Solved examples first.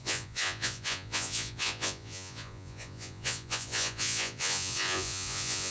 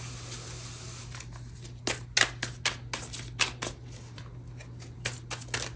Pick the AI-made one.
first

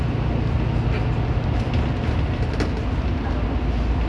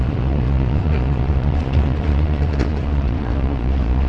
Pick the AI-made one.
second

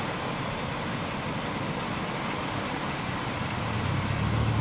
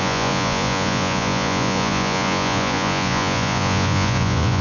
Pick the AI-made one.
second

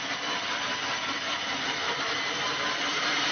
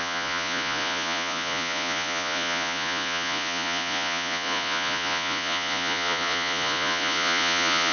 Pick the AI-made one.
second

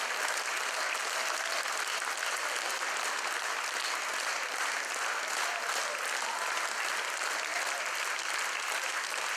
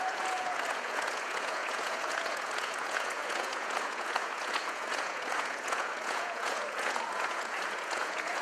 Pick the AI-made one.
second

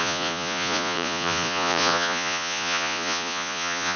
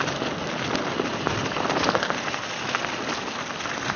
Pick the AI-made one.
first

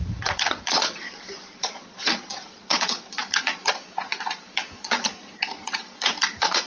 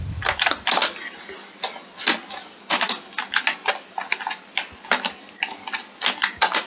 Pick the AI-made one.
first